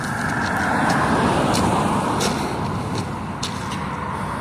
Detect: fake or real real